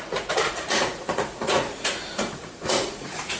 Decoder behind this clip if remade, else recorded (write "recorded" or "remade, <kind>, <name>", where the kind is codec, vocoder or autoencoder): remade, vocoder, Vocos